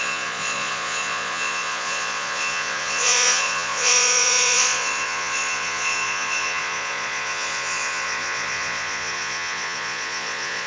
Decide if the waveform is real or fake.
fake